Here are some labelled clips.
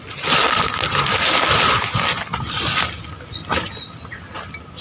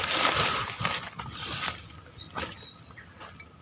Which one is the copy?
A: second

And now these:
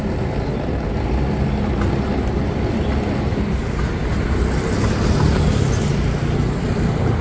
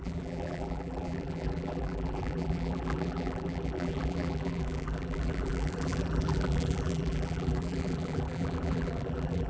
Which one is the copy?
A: second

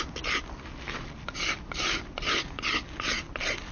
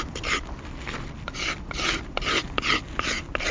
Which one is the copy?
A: second